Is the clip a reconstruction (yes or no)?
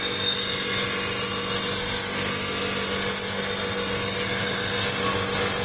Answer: no